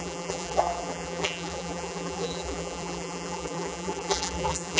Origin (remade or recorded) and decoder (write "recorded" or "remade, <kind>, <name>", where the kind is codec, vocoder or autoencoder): remade, vocoder, BigVGAN v2